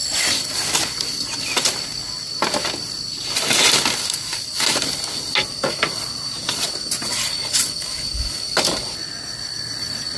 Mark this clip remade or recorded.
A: recorded